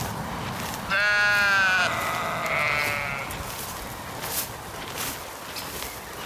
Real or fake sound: real